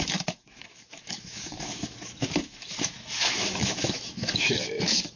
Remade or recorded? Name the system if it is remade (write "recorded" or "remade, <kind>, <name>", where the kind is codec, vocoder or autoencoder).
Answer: remade, autoencoder, DAC-VAE